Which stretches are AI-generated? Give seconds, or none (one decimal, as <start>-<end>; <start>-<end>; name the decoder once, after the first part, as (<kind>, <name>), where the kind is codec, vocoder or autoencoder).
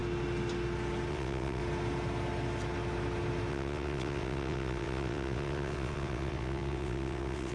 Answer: 1.1-1.6 (vocoder, WaveNeXt); 3.5-7.5